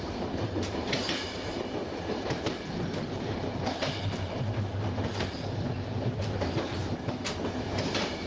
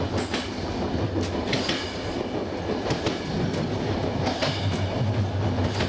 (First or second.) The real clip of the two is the second